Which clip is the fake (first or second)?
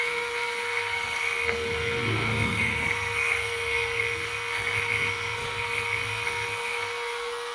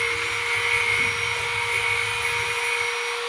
first